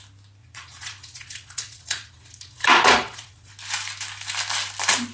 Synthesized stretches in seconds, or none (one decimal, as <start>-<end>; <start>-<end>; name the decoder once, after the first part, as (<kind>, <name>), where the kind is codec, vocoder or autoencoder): 0.4-3.5 (vocoder, Vocos)